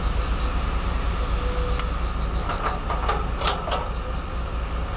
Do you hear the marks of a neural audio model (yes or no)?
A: no